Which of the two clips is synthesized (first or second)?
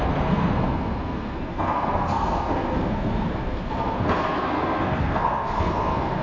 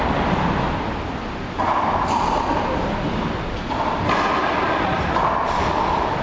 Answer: first